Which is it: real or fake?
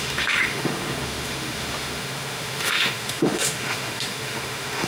fake